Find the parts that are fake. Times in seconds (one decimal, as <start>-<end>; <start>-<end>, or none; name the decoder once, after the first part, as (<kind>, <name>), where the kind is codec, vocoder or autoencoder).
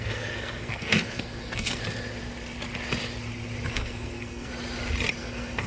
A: 0.0-1.8 (codec, SNAC); 3.7-4.5; 5.2-5.7